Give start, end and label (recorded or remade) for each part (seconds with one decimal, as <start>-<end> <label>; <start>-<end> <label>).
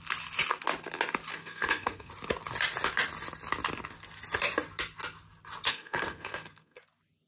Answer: 0.0-1.3 recorded; 1.3-2.1 remade; 2.1-5.7 recorded; 5.7-6.8 remade; 6.8-7.3 recorded